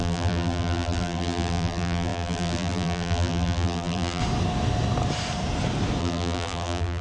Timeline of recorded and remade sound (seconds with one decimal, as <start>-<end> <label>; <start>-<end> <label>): 0.0-4.2 remade; 4.2-6.0 recorded; 6.0-7.0 remade